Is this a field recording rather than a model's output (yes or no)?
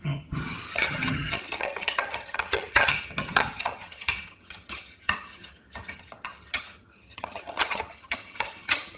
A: no